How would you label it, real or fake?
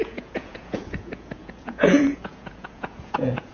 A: fake